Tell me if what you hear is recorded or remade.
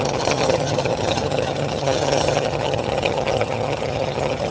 remade